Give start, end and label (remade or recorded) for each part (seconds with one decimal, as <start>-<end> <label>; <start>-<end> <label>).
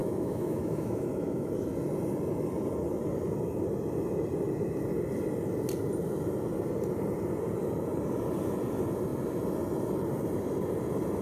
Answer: 0.0-1.5 remade; 1.5-11.2 recorded